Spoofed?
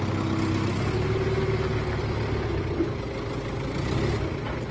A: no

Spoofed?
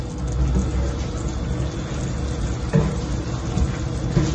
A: no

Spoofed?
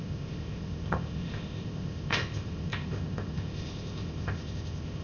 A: yes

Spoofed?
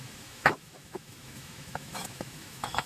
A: yes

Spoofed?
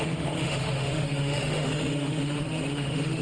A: yes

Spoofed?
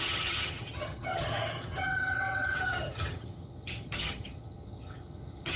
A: yes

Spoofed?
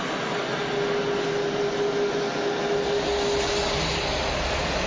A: no